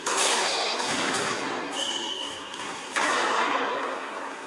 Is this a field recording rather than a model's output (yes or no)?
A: no